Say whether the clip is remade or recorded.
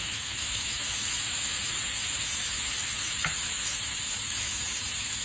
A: remade